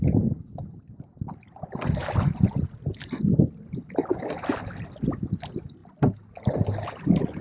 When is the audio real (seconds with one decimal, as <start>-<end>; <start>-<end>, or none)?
0.0-2.0; 4.1-7.4